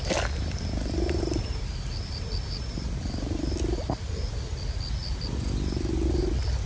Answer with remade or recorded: recorded